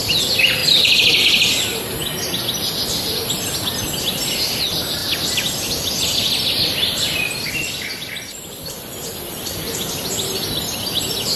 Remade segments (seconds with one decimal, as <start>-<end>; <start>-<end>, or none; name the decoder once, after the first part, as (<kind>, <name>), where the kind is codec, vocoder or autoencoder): none